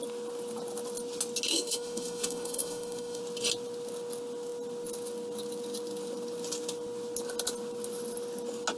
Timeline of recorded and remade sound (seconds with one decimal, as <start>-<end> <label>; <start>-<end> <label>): 0.0-1.5 recorded; 1.5-3.2 remade; 3.2-8.8 recorded

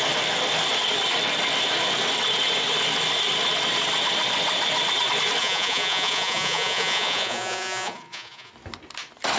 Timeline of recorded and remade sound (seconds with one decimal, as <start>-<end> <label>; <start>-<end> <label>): 0.0-5.4 recorded; 5.4-8.5 remade; 8.5-9.4 recorded

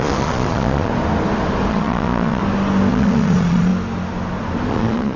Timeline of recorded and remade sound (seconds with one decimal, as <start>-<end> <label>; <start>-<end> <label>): 0.0-0.9 remade; 0.9-1.7 recorded; 1.7-2.4 remade; 2.4-2.9 recorded; 2.9-3.7 remade; 3.7-4.7 recorded; 4.7-5.2 remade

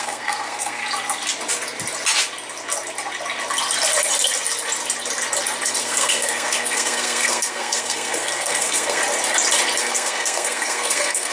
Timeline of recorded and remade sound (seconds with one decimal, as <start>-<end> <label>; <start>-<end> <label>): 0.0-0.8 remade; 0.8-5.8 recorded; 5.8-9.0 remade; 9.0-9.8 recorded; 9.8-11.3 remade

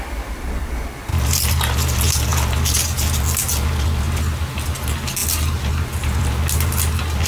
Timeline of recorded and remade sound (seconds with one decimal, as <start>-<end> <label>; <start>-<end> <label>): 0.0-7.3 recorded

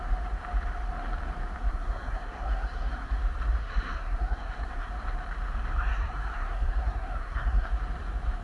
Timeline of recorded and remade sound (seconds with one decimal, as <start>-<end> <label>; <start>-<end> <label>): 0.0-1.7 recorded; 1.7-3.2 remade; 3.2-3.6 recorded; 3.6-4.9 remade; 4.9-5.9 recorded; 5.9-7.7 remade; 7.7-8.4 recorded

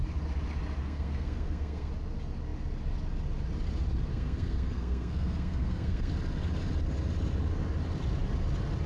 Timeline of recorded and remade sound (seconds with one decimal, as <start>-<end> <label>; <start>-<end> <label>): 0.0-0.8 recorded; 0.8-1.9 remade; 1.9-4.1 recorded; 4.1-6.1 remade; 6.1-8.9 recorded